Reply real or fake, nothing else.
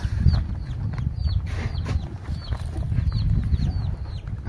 real